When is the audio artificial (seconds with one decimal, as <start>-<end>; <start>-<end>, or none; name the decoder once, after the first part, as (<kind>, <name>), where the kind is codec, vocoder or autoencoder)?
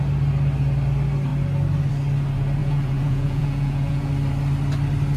2.6-4.1 (vocoder, Vocos)